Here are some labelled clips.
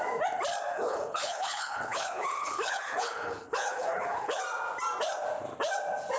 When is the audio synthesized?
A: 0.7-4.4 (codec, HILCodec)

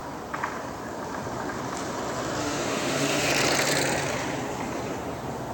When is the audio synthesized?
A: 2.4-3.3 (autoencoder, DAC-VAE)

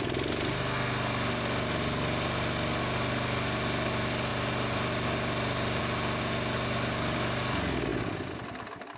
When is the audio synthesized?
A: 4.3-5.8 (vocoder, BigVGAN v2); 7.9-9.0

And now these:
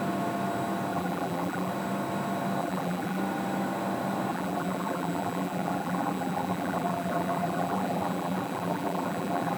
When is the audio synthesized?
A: 0.9-1.7 (vocoder, BigVGAN v2); 2.6-3.2; 4.3-9.6